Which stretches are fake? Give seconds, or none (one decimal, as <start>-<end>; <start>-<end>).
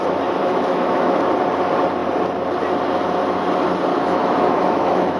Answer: 0.4-1.2; 3.9-5.2